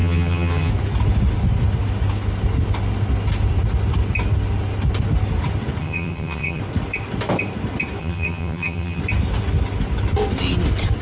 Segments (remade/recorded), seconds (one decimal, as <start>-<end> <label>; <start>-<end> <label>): 0.0-0.7 remade; 0.7-5.8 recorded; 5.8-6.6 remade; 6.6-8.0 recorded; 8.0-9.0 remade; 9.0-11.0 recorded